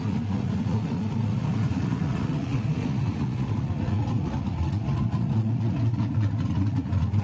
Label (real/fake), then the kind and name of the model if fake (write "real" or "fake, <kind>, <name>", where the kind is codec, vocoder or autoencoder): fake, vocoder, Vocos